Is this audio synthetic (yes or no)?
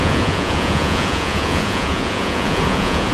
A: yes